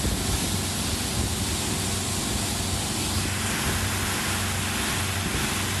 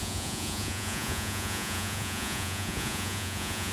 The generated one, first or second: second